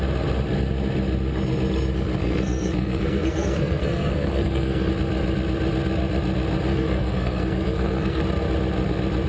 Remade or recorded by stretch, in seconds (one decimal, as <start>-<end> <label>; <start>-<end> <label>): 0.0-2.2 recorded; 2.2-4.9 remade; 4.9-6.7 recorded; 6.7-8.2 remade; 8.2-9.3 recorded